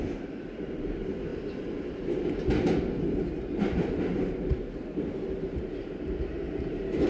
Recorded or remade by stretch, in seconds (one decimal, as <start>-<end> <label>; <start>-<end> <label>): 0.0-7.1 recorded